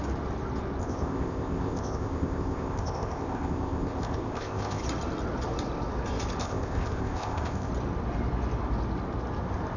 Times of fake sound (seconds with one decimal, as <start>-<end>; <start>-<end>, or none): 0.8-4.8; 6.4-7.7